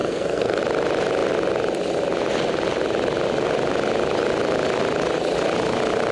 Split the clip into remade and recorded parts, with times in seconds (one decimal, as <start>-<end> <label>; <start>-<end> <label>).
0.0-0.6 remade; 0.6-6.1 recorded